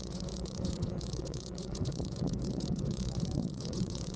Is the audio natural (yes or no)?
no